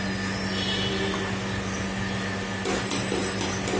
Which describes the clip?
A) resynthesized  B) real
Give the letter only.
B